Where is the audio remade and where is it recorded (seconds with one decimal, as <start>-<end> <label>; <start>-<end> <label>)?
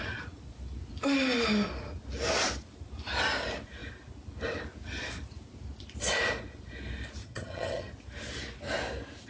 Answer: 0.0-7.2 recorded; 7.2-7.9 remade; 7.9-9.3 recorded